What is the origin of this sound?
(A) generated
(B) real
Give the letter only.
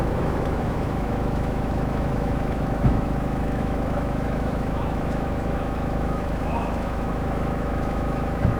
A